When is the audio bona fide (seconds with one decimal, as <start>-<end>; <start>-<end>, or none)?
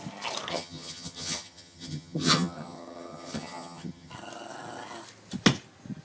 0.0-0.5; 4.1-6.0